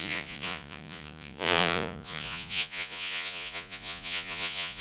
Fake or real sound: fake